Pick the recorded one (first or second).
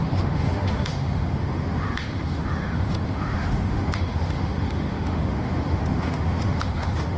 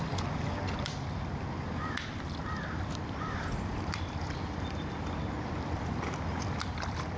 second